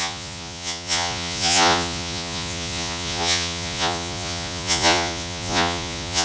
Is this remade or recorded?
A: remade